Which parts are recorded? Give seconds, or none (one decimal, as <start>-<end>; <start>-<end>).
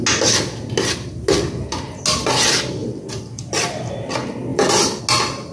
0.0-2.8; 3.9-4.5; 5.0-5.5